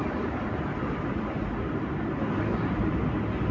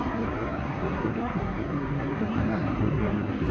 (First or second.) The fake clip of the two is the second